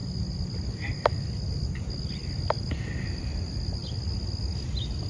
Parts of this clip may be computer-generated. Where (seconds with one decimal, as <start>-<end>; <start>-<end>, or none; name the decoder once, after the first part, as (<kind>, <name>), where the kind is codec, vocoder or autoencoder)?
none